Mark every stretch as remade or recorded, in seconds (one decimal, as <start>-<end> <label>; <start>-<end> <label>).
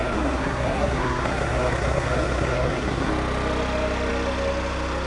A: 0.0-3.1 remade; 3.1-5.1 recorded